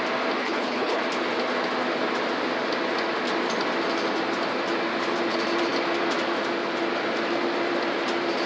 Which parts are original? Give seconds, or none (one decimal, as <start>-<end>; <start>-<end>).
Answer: 0.0-0.4; 1.0-8.5